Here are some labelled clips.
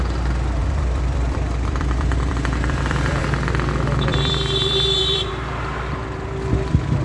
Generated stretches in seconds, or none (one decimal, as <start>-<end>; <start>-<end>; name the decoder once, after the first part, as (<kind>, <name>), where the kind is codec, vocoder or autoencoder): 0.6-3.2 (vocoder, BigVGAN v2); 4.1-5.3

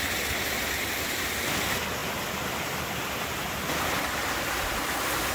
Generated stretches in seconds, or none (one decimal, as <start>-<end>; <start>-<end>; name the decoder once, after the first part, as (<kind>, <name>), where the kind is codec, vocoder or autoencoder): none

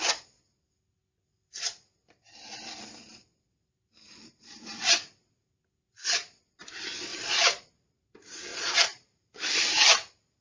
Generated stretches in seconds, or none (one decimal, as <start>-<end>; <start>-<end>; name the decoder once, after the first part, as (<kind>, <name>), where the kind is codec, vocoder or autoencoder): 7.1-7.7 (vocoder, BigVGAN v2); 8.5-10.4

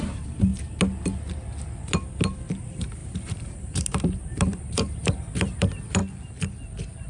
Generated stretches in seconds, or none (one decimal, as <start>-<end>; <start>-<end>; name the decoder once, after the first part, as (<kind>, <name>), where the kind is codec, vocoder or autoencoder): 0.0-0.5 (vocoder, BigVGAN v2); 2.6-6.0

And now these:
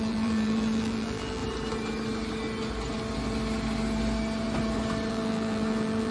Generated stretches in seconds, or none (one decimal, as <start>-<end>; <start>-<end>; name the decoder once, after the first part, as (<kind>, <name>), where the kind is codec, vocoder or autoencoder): 0.0-1.4 (vocoder, BigVGAN v2); 5.1-6.1